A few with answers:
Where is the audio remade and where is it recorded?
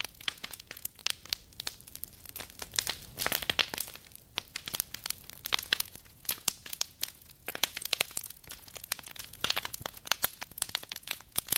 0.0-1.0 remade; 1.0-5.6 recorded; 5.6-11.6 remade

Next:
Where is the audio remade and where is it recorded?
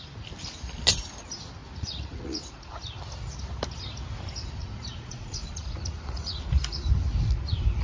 0.0-1.6 recorded; 1.6-2.7 remade; 2.7-4.6 recorded; 4.6-6.4 remade; 6.4-7.8 recorded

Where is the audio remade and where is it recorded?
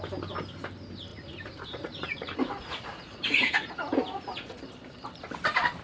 0.0-1.1 recorded; 1.1-4.6 remade; 4.6-5.8 recorded